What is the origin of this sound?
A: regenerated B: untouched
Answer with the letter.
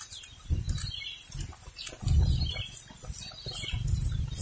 B